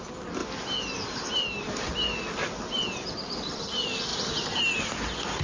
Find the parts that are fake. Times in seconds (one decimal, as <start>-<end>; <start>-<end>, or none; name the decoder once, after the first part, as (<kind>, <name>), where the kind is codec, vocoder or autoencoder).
none